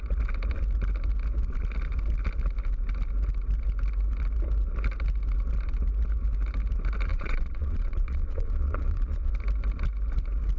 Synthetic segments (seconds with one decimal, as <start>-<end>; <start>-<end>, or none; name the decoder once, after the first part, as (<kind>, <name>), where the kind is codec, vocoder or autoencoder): 7.1-9.3 (vocoder, Vocos)